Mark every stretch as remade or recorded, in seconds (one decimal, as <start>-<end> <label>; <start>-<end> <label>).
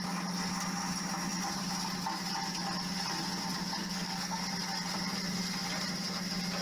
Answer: 0.0-3.8 recorded; 3.8-4.4 remade; 4.4-6.6 recorded